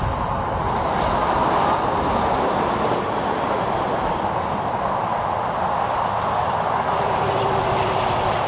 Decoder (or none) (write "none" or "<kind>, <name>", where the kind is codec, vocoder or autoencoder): none